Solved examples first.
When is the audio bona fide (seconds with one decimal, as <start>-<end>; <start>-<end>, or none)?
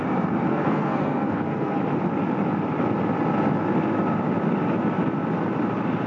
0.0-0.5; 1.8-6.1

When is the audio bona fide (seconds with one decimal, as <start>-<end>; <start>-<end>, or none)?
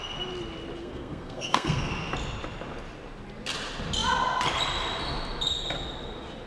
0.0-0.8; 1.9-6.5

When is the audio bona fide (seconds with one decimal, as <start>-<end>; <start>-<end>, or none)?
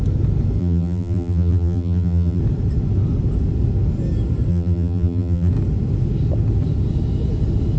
0.0-0.6; 2.4-4.5; 5.5-7.8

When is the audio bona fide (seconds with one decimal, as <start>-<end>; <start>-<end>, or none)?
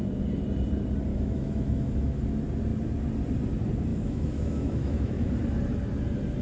0.0-1.1; 2.2-3.9; 5.3-6.4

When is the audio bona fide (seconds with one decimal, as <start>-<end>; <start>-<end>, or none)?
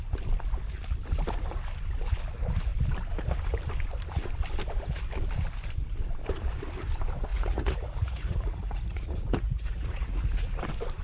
0.0-7.3; 10.6-11.0